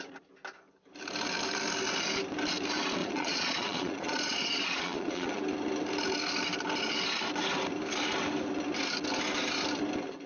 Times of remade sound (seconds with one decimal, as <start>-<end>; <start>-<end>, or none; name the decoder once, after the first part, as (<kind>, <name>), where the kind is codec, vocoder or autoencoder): 3.0-5.4 (vocoder, Vocos)